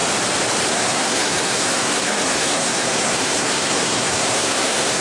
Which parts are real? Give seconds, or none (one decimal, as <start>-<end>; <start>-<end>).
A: 0.0-0.7

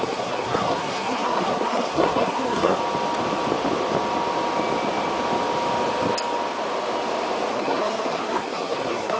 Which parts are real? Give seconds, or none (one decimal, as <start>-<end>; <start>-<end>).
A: 2.8-7.5

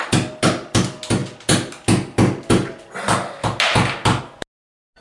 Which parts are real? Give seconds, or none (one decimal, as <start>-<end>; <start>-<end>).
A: 0.0-5.0

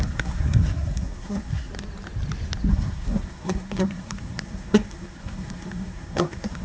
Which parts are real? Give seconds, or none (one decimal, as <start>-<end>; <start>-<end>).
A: 1.7-2.7

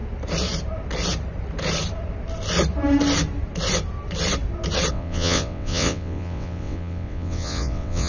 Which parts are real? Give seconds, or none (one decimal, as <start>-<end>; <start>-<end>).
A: 0.0-4.9